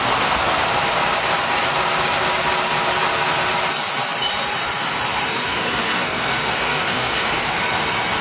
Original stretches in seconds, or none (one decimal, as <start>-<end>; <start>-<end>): 0.0-5.5; 7.5-8.2